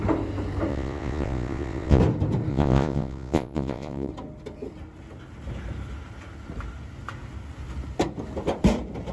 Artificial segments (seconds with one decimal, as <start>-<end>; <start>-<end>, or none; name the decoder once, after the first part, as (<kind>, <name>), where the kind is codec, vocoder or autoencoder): 0.7-2.0 (vocoder, Vocos); 2.5-4.1